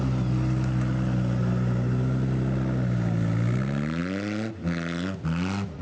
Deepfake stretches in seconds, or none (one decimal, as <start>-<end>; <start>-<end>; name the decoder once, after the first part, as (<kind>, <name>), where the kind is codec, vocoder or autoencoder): none